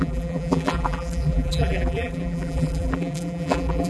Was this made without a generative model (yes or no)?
no